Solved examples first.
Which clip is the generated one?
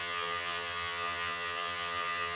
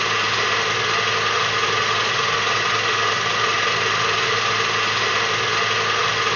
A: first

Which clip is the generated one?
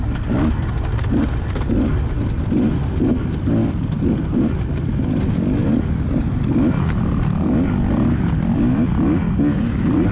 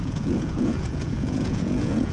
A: second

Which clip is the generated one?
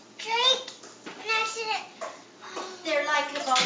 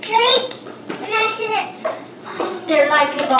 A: second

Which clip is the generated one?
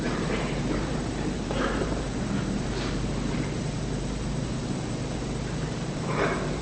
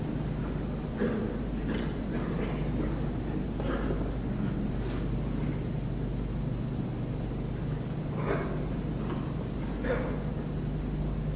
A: first